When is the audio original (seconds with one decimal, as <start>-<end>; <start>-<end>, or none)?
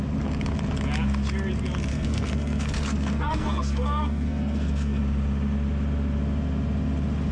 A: 0.0-1.9; 5.0-7.3